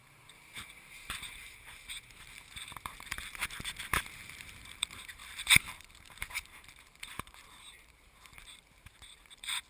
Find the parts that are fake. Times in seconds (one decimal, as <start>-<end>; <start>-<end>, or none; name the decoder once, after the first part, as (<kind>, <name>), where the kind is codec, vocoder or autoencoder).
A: 0.0-3.4 (vocoder, BigVGAN v2); 4.0-9.7